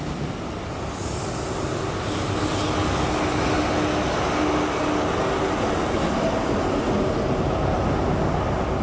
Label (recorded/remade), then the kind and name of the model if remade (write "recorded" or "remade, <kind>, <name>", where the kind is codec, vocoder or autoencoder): recorded